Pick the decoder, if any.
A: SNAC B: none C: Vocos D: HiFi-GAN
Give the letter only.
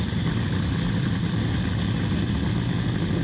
B